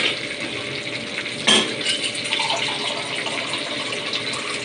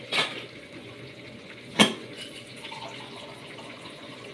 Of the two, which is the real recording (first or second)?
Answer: first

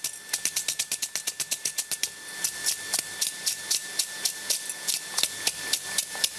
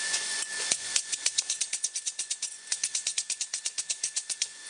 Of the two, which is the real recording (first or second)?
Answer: first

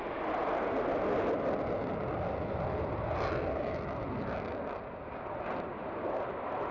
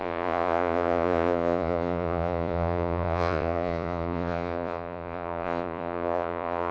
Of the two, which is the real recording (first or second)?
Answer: first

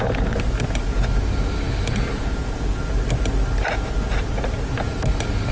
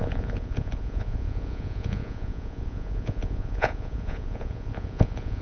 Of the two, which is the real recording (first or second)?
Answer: first